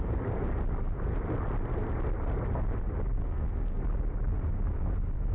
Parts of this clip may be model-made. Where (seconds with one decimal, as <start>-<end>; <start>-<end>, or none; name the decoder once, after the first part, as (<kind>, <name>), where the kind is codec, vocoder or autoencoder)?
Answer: 3.2-3.8 (codec, SNAC)